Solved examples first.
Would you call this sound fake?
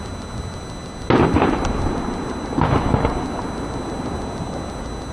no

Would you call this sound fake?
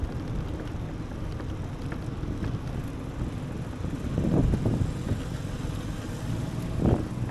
no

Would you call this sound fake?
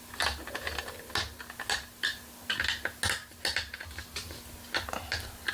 no